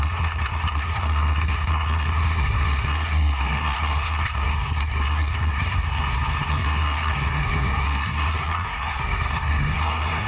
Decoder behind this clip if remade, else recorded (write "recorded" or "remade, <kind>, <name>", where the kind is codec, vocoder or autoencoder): remade, codec, SNAC